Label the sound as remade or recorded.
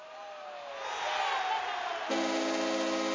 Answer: recorded